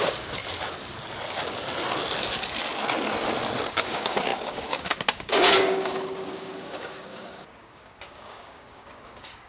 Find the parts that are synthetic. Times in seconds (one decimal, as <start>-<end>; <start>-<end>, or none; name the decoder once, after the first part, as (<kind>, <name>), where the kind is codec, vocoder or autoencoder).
0.0-0.4 (codec, DAC); 3.7-9.5